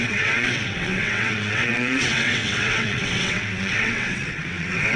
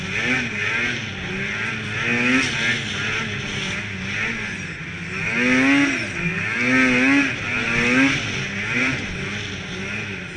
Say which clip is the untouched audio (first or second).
second